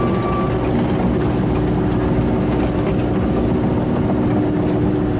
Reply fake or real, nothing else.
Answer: real